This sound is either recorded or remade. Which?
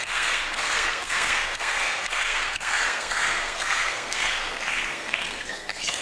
remade